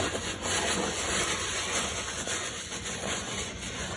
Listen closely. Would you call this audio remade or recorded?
remade